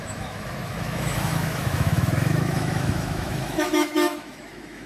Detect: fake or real fake